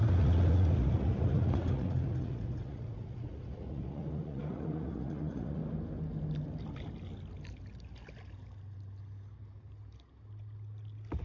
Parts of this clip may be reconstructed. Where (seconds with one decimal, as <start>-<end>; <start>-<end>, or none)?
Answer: 0.0-5.6